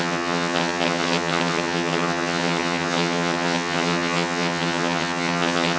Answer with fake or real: fake